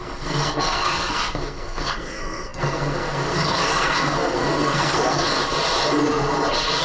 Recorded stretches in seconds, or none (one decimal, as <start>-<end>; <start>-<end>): 5.4-6.8